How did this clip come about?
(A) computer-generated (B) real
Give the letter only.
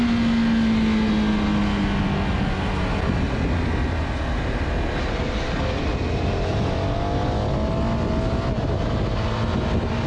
B